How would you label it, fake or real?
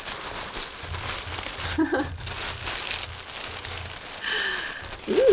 real